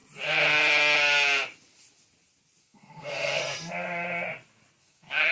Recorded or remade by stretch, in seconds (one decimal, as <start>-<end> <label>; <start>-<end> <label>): 0.0-2.6 recorded; 2.6-3.4 remade; 3.4-4.8 recorded; 4.8-5.3 remade